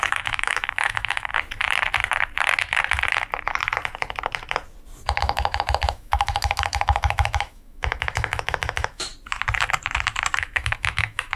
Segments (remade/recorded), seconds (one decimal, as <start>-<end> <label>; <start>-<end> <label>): 0.0-1.3 remade; 1.3-5.2 recorded; 5.2-9.1 remade; 9.1-10.4 recorded; 10.4-11.4 remade